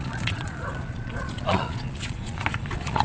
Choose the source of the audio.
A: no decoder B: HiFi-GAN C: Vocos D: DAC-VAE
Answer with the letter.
C